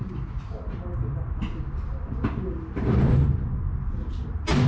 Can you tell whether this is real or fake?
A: real